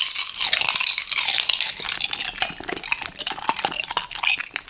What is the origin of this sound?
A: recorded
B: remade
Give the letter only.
A